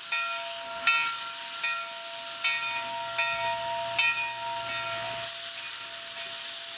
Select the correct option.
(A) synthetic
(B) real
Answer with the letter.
B